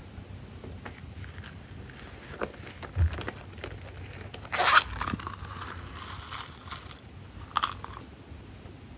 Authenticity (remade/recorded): recorded